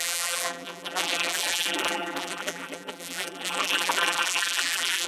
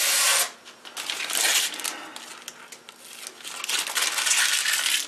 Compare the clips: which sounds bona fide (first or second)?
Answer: second